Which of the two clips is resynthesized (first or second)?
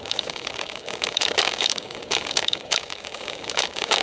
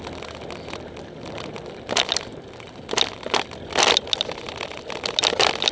first